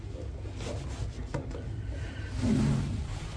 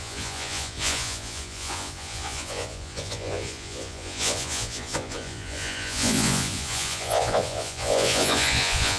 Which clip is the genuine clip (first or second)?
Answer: first